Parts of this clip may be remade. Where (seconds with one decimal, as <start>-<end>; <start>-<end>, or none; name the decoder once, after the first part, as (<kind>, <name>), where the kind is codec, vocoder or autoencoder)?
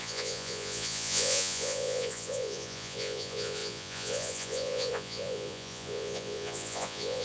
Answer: 0.0-7.2 (vocoder, Vocos)